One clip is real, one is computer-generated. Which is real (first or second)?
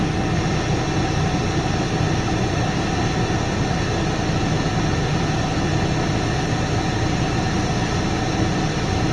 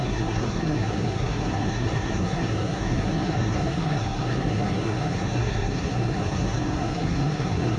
first